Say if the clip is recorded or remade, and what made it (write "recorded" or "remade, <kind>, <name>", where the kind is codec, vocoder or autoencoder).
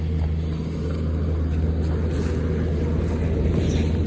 recorded